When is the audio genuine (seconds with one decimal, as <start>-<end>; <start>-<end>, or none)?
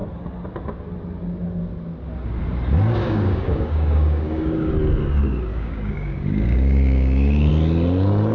0.0-3.0; 4.7-5.5; 7.5-8.3